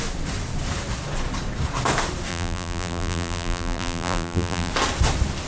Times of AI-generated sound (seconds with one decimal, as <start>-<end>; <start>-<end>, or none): 2.3-4.7